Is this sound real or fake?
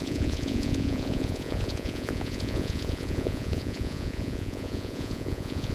fake